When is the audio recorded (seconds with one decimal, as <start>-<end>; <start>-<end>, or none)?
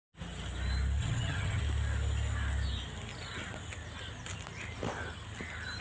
0.0-1.0; 1.6-5.8